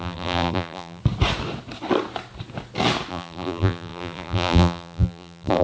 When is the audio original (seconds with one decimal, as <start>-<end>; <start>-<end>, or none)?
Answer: 1.0-3.1